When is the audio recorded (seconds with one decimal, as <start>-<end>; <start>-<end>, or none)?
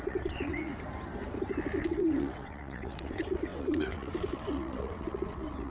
0.7-1.8